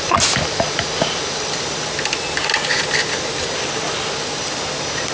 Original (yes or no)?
yes